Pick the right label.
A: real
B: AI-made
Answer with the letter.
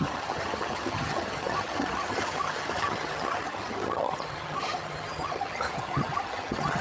B